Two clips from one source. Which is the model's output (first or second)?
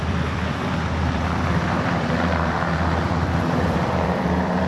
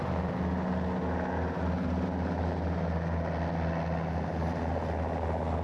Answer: first